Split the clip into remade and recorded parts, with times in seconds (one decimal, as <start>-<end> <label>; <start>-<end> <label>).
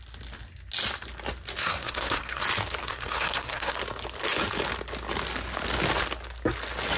0.0-1.6 recorded; 1.6-2.4 remade; 2.4-2.8 recorded; 2.8-3.8 remade; 3.8-7.0 recorded